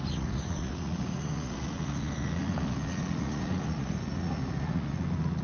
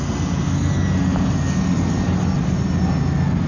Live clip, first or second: second